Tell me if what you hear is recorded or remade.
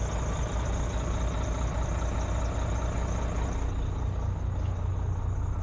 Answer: recorded